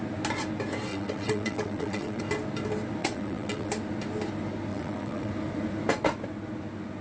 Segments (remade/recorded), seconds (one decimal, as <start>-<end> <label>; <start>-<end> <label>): 0.0-0.9 recorded; 0.9-2.2 remade; 2.2-3.0 recorded; 3.0-3.7 remade; 3.7-4.7 recorded; 4.7-5.3 remade; 5.3-7.0 recorded